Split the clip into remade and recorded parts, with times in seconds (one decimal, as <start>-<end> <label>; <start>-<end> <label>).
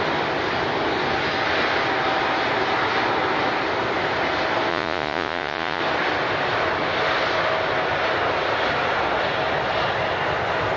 0.0-4.7 recorded; 4.7-5.8 remade; 5.8-10.8 recorded